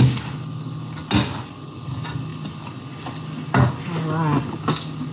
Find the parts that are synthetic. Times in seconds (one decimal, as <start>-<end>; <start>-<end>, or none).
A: none